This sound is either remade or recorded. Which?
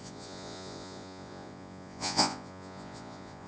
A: remade